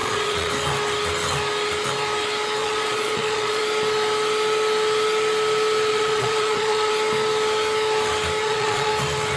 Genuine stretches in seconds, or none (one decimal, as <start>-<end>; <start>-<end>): 0.5-2.6; 3.6-5.9; 6.9-8.4; 8.9-9.4